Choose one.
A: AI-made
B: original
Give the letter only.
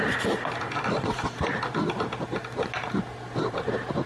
B